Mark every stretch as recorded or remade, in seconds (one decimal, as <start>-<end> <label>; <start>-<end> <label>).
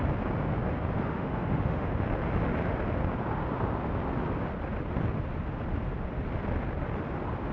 0.0-1.1 recorded; 1.1-1.9 remade; 1.9-7.5 recorded